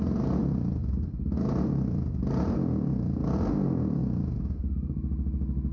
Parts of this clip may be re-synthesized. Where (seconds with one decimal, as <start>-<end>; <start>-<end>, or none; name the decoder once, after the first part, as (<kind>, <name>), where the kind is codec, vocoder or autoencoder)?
0.4-1.4 (vocoder, BigVGAN v2)